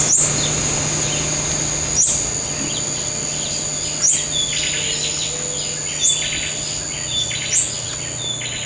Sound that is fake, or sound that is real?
real